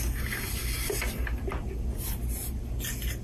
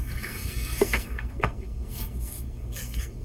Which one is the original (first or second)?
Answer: first